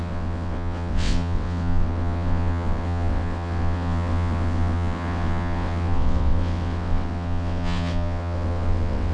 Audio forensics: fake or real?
fake